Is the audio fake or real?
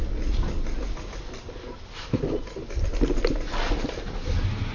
real